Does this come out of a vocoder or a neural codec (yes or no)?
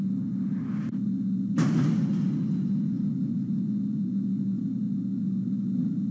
no